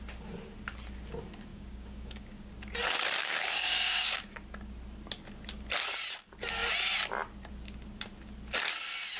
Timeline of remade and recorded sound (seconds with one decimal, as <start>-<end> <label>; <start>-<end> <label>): 0.0-1.5 recorded; 1.5-2.5 remade; 2.5-3.2 recorded; 3.2-4.2 remade; 4.2-9.2 recorded